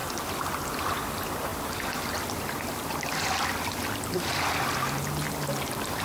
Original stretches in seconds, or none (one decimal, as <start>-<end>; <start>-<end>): 0.0-6.0